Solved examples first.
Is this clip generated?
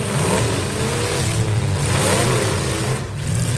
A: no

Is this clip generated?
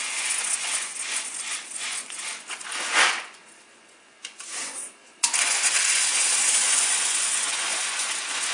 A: yes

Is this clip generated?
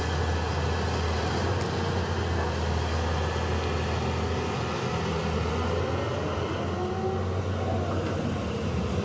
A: no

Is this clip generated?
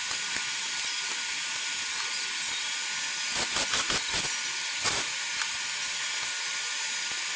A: no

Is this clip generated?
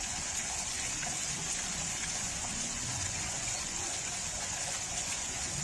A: yes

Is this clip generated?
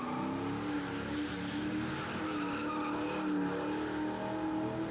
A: no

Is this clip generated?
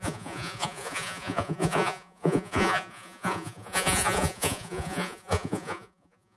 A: yes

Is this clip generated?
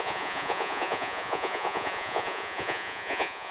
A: yes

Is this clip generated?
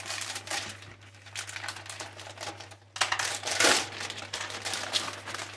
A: no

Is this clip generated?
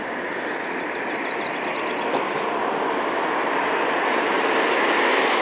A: no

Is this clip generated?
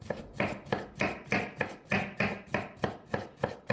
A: no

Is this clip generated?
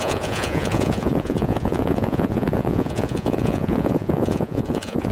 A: yes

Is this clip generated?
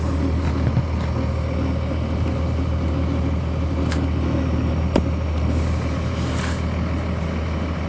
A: no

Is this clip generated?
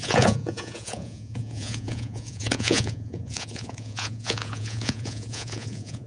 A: yes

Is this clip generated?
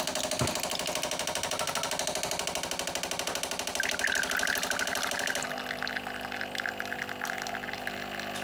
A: no